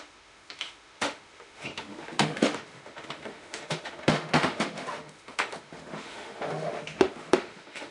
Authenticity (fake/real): fake